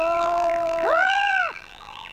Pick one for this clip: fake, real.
fake